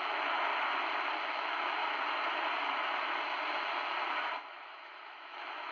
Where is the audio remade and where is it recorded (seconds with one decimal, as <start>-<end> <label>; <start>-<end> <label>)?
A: 0.0-0.5 remade; 0.5-1.3 recorded; 1.3-1.8 remade; 1.8-4.5 recorded; 4.5-5.7 remade